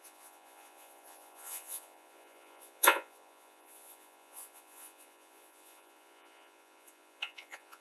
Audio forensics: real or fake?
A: fake